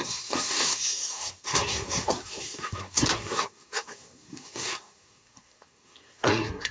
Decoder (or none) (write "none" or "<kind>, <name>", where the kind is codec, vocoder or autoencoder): codec, SNAC